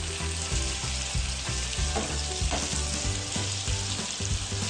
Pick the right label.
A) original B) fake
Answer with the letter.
A